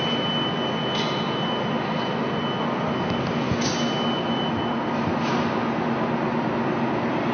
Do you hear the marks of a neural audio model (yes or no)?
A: no